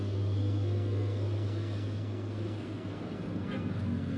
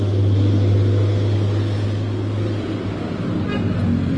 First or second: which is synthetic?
first